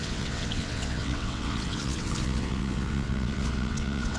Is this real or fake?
fake